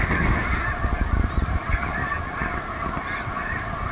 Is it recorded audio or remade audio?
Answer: recorded